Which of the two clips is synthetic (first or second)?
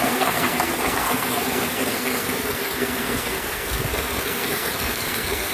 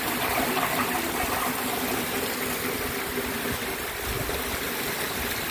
first